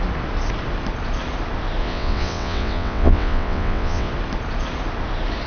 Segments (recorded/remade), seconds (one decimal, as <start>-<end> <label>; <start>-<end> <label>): 0.0-1.8 recorded; 1.8-4.1 remade; 4.1-5.5 recorded